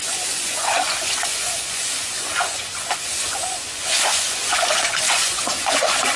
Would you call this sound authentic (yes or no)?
no